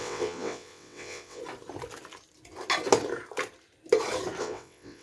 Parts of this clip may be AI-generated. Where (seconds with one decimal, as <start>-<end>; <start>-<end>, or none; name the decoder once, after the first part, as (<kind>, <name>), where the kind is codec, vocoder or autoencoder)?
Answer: 0.0-1.4 (vocoder, WaveNeXt); 4.4-5.0